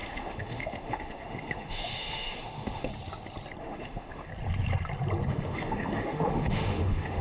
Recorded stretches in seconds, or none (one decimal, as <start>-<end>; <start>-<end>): 2.9-3.6; 4.3-5.3